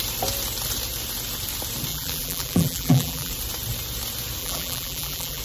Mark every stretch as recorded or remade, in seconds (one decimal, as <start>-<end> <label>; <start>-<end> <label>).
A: 0.0-1.9 recorded; 1.9-3.3 remade; 3.3-4.4 recorded; 4.4-5.4 remade